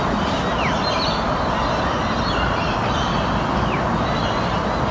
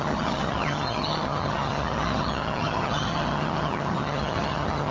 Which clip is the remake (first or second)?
second